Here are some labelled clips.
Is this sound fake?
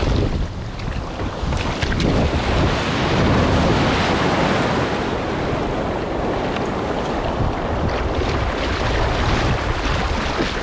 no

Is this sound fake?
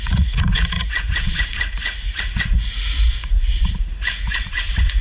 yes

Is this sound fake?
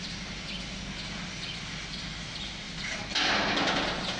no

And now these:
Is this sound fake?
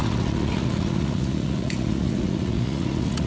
yes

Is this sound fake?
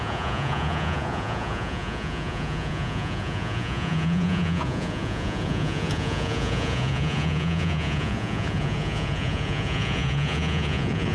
yes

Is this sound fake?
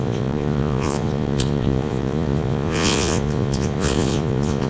yes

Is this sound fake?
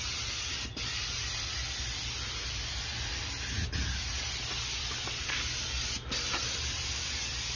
no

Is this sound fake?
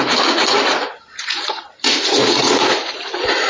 yes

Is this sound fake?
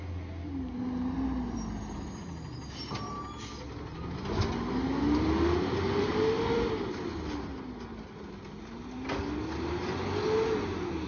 no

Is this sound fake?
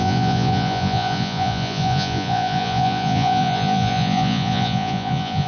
yes